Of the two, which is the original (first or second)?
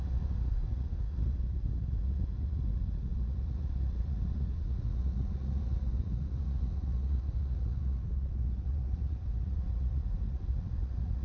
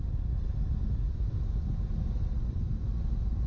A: second